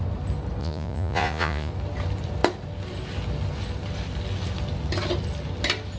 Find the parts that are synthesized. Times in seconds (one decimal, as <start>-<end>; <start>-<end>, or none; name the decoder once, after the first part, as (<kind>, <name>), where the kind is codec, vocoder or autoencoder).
0.6-1.7 (vocoder, Vocos)